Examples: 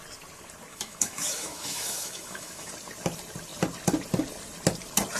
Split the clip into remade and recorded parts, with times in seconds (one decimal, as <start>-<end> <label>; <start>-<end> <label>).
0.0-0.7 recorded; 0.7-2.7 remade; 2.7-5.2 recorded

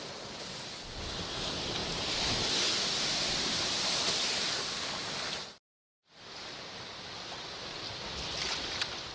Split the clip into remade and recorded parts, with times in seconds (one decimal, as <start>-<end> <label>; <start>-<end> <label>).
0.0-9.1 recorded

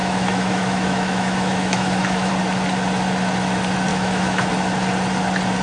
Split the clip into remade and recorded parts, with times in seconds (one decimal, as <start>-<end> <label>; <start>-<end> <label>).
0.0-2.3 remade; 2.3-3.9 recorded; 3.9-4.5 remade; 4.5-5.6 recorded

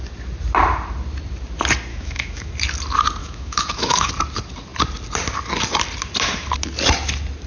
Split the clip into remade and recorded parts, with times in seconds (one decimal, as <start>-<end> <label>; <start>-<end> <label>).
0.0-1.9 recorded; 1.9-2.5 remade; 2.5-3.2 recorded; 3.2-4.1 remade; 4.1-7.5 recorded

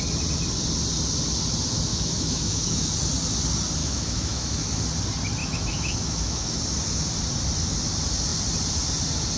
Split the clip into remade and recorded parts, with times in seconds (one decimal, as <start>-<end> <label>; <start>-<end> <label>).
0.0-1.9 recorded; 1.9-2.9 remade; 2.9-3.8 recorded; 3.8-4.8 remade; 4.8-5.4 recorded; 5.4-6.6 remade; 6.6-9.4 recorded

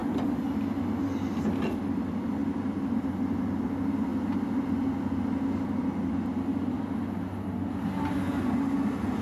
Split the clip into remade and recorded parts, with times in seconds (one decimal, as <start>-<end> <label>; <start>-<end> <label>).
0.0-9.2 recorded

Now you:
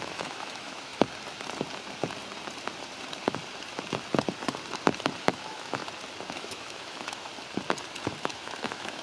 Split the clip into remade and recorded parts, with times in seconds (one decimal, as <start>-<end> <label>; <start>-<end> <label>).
0.0-0.9 remade; 0.9-5.2 recorded; 5.2-5.8 remade; 5.8-6.4 recorded; 6.4-7.3 remade; 7.3-8.2 recorded; 8.2-9.0 remade